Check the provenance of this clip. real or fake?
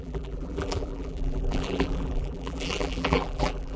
fake